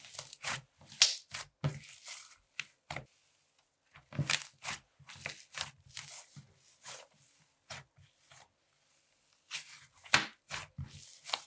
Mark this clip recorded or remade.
recorded